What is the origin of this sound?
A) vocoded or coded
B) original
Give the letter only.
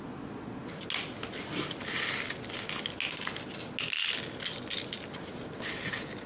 B